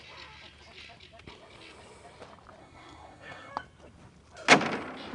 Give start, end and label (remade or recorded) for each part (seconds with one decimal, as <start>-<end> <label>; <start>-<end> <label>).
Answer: 0.0-2.6 recorded; 2.6-3.5 remade; 3.5-5.1 recorded